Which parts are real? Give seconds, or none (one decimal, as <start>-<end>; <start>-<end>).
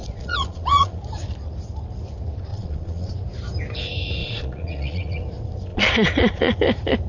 1.0-2.5; 3.1-4.2; 5.2-5.7; 6.6-7.1